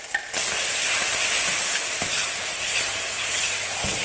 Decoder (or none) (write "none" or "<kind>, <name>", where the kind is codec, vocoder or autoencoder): none